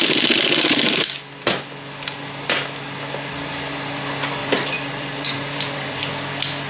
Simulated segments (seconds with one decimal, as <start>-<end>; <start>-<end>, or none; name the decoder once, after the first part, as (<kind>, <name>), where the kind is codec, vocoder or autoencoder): 4.4-6.0 (vocoder, BigVGAN v2)